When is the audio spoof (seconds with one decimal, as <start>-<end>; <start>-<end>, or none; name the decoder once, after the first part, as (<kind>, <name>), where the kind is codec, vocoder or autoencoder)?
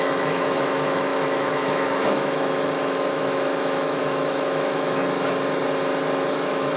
0.0-5.0 (autoencoder, DAC-VAE); 6.3-6.8